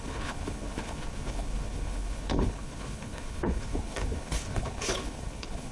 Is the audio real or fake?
fake